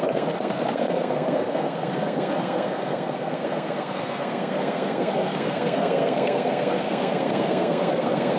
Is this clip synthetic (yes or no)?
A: yes